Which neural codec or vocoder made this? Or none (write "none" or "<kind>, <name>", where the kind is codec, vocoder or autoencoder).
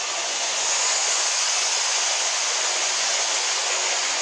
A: vocoder, Vocos